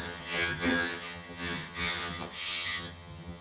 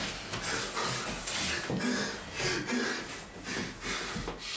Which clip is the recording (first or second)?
second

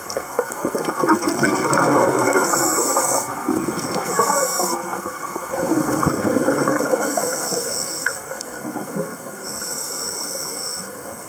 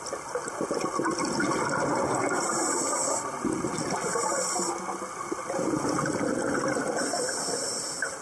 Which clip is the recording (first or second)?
second